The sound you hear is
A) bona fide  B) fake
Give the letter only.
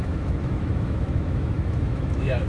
B